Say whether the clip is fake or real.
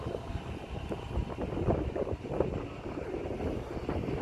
real